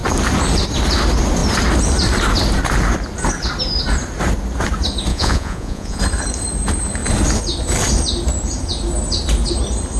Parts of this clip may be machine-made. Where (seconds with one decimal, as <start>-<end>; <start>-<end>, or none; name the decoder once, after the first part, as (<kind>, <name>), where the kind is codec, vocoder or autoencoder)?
5.1-6.0 (vocoder, Vocos)

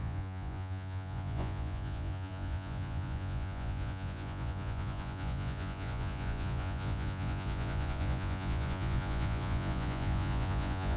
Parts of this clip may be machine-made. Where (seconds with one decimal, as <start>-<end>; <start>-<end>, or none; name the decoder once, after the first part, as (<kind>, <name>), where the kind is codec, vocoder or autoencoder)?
0.0-11.0 (vocoder, Vocos)

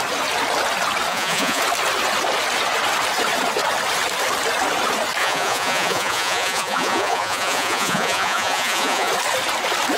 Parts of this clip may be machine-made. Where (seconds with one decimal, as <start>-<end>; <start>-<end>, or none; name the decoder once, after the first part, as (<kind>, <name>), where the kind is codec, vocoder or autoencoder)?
1.1-1.6 (vocoder, Vocos); 5.2-9.1